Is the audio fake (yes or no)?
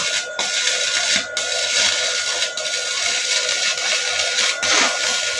no